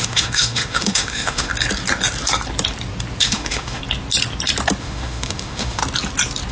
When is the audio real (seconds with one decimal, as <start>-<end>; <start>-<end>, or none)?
1.5-3.2; 3.8-4.8; 5.8-6.5